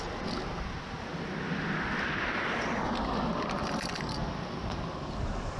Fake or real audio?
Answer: real